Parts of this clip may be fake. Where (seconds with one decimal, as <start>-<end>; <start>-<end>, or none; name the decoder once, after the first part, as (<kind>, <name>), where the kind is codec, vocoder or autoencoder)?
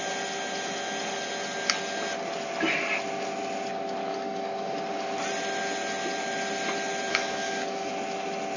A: 4.1-4.7 (codec, DAC); 7.1-7.9